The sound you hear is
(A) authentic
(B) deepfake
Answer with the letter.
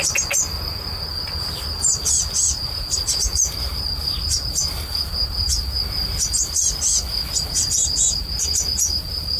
A